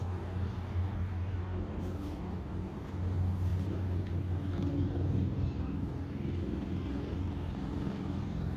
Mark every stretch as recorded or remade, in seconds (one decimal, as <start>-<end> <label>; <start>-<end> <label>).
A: 0.0-8.6 remade